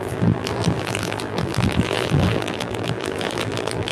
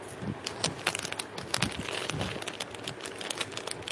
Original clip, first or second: second